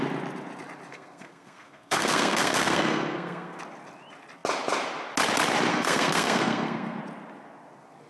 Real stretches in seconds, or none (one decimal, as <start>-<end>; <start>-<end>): 0.0-0.9; 3.6-5.7; 7.0-8.1